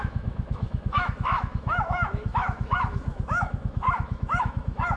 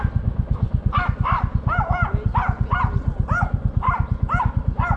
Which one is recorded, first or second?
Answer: second